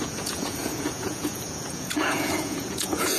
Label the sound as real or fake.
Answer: fake